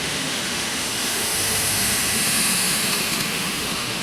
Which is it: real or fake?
fake